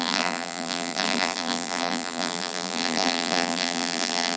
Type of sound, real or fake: fake